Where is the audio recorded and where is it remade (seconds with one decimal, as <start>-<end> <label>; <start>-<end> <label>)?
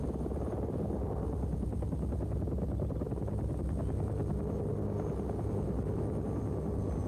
0.0-7.1 recorded